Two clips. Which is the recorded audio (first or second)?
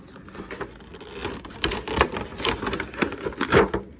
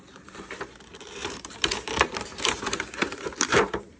first